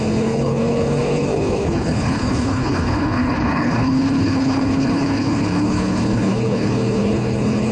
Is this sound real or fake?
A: fake